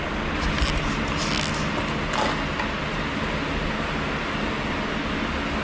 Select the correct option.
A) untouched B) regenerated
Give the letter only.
A